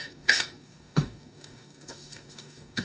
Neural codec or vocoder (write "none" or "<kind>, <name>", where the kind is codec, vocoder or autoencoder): codec, DAC